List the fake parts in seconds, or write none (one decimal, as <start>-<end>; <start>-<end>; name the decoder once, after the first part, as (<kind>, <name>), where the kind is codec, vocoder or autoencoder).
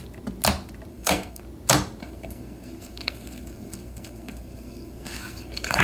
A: 0.9-1.4 (codec, SNAC); 2.0-5.8